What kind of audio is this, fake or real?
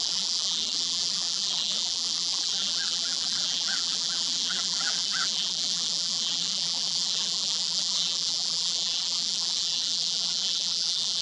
fake